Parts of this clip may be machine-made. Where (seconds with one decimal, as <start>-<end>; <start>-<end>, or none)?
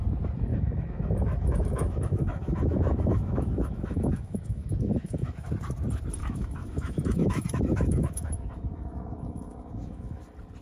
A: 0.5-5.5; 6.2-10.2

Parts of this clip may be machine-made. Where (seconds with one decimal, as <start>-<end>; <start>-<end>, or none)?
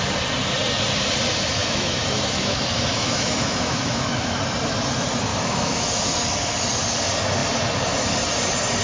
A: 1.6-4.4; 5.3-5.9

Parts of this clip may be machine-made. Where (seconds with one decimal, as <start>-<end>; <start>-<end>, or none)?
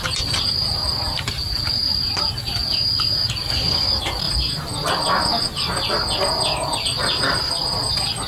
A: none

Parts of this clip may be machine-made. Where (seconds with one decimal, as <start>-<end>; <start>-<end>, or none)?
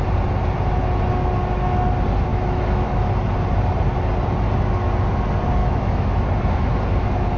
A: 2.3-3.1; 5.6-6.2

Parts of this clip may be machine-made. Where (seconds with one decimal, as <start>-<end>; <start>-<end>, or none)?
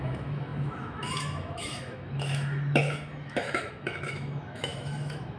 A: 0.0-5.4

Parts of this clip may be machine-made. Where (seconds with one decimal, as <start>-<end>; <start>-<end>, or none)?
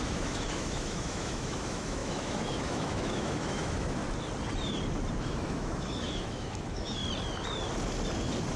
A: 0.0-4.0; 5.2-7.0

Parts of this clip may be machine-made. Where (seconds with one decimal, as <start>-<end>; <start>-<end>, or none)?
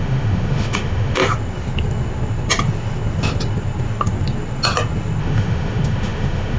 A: 0.0-1.2; 5.2-6.6